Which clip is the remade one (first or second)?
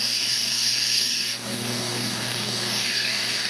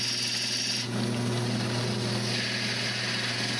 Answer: first